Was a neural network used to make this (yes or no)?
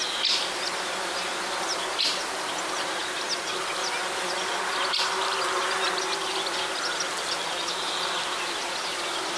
no